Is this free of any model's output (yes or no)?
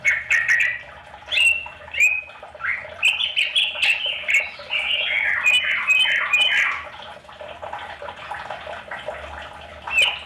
yes